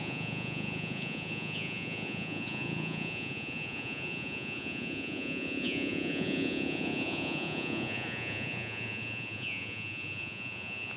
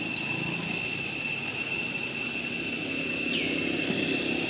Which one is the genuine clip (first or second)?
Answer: second